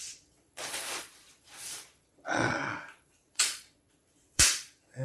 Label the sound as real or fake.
fake